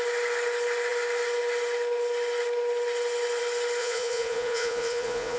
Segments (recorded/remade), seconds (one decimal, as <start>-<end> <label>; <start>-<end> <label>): 0.0-3.8 recorded; 3.8-5.4 remade